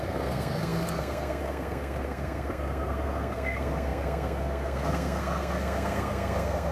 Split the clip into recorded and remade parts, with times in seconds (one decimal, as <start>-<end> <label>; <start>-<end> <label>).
0.0-6.7 remade